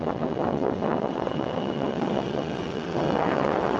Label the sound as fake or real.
fake